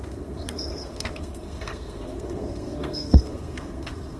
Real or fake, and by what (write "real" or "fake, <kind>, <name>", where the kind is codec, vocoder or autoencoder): fake, codec, SNAC